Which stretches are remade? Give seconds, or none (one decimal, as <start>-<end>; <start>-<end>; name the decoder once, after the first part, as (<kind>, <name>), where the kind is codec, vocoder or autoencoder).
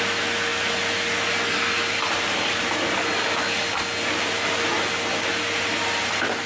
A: none